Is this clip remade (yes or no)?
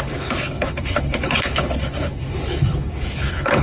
yes